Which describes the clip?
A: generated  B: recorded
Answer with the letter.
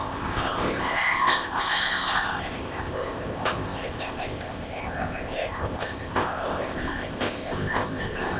A